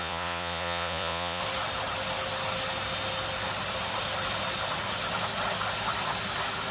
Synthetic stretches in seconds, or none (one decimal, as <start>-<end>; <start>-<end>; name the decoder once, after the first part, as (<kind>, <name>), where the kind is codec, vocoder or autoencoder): 0.0-1.4 (vocoder, Vocos)